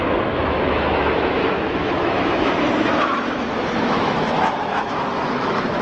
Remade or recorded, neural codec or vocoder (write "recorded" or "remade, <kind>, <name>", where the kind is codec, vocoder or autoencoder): remade, autoencoder, DAC-VAE